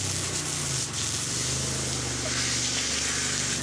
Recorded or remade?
recorded